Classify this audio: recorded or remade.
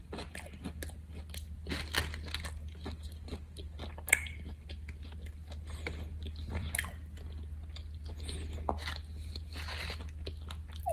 recorded